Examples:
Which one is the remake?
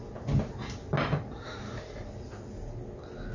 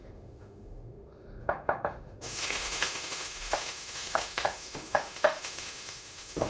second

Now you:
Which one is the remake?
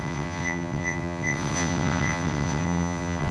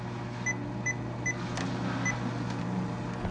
first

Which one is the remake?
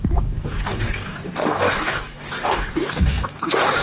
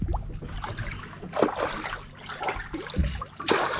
first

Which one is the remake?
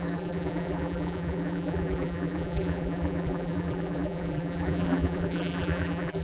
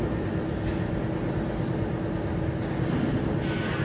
first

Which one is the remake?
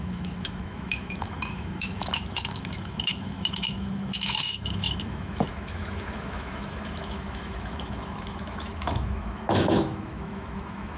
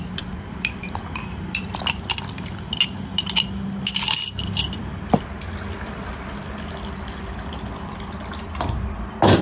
first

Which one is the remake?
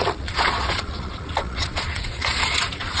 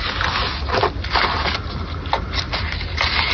first